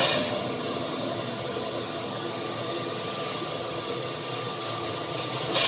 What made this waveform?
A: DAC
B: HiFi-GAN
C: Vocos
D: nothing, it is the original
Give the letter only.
B